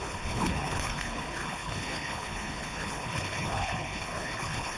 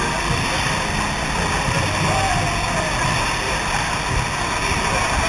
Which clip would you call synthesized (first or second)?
first